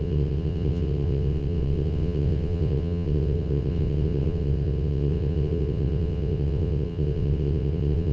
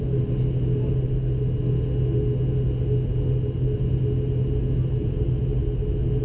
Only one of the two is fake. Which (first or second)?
first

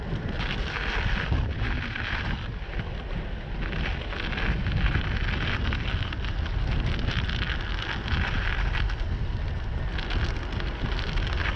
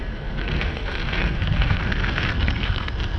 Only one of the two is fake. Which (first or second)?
second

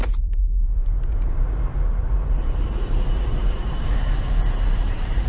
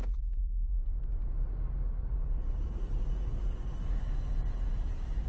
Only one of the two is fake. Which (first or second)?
first